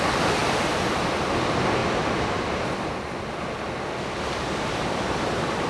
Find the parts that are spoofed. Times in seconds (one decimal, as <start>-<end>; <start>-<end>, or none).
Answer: none